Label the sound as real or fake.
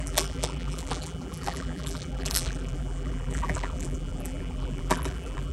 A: fake